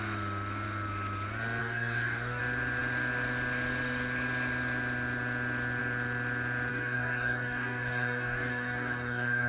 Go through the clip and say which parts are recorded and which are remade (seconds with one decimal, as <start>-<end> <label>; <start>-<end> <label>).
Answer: 0.0-1.6 recorded; 1.6-2.4 remade; 2.4-6.7 recorded; 6.7-9.5 remade